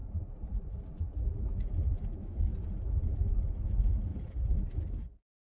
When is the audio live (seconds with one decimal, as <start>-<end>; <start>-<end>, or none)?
0.0-5.5

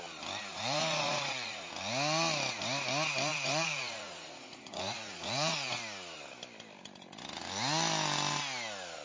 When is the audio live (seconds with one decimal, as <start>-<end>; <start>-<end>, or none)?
0.0-0.5; 1.7-3.3; 5.7-9.0

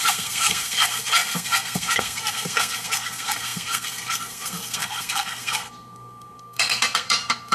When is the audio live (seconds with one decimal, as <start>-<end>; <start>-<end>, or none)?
none

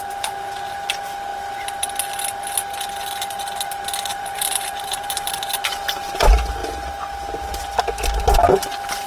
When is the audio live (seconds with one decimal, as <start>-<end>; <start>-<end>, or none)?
0.0-4.1; 5.5-9.1